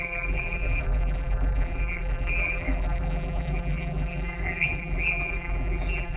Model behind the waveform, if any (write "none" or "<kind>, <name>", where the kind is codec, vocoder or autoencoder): vocoder, BigVGAN v2